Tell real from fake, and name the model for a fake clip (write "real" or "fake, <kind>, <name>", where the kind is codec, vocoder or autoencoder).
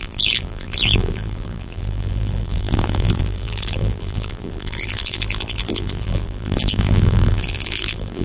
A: fake, vocoder, BigVGAN v2